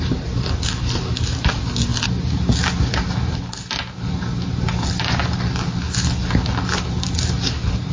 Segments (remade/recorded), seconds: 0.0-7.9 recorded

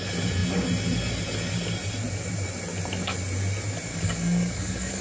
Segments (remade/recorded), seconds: 0.0-3.9 recorded; 3.9-5.0 remade

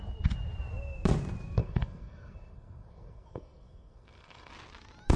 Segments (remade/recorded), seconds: 0.0-1.6 recorded; 1.6-4.5 remade; 4.5-5.2 recorded